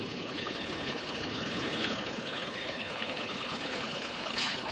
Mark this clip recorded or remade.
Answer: remade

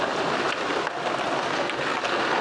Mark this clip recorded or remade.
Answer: recorded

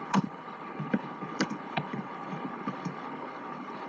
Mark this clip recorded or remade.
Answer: remade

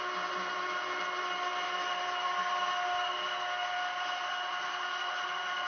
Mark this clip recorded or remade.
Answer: recorded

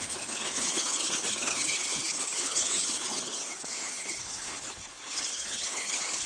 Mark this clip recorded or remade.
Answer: remade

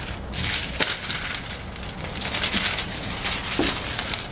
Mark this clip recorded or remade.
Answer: recorded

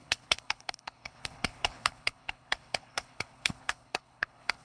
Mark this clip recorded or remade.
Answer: remade